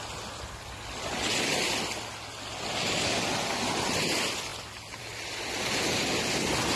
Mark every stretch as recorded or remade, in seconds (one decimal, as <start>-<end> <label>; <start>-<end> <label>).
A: 0.0-6.8 recorded